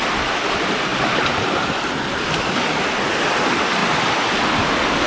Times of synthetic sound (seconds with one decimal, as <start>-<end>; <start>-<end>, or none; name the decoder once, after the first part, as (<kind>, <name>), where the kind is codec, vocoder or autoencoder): 0.9-2.7 (vocoder, BigVGAN v2)